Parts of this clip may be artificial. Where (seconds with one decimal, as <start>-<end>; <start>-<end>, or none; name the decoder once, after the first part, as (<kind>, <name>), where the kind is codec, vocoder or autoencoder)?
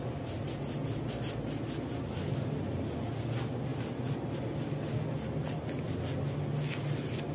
none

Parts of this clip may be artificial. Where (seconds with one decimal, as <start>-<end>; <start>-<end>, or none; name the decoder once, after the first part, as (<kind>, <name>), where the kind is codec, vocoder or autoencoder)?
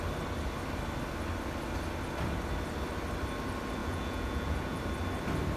3.8-4.8 (vocoder, Vocos)